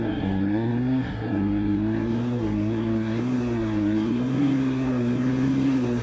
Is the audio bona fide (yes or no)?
no